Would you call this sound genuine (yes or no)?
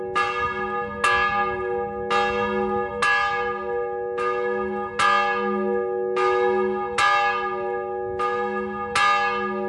yes